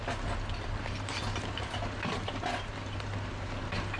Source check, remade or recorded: recorded